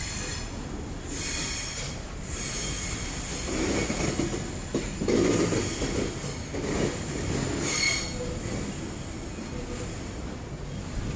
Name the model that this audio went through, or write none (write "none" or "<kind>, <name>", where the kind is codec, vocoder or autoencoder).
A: none